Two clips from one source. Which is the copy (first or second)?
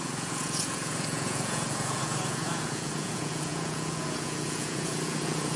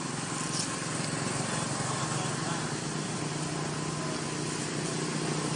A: first